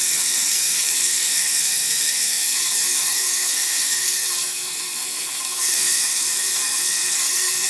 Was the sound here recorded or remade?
remade